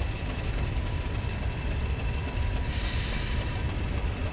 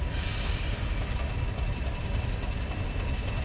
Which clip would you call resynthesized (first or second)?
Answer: first